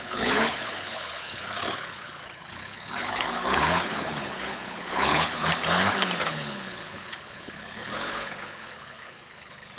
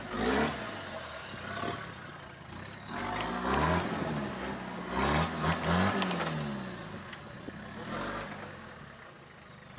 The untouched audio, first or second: second